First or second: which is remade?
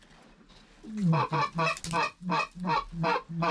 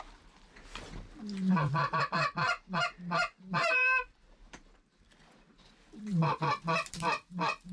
second